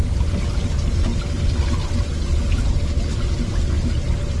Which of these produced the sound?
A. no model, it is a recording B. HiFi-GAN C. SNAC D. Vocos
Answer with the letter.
A